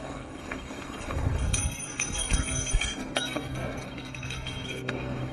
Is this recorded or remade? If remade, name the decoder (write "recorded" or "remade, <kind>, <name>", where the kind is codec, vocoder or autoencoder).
remade, codec, SNAC